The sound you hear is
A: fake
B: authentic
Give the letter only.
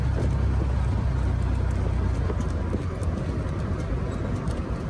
B